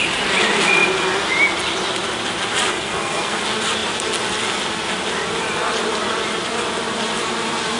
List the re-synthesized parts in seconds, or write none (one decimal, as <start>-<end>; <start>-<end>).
2.7-3.4